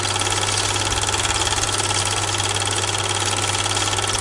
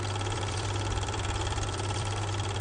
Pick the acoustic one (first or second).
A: first